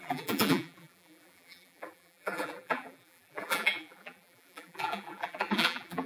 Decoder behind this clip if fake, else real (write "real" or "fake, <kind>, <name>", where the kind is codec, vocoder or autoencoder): fake, vocoder, BigVGAN v2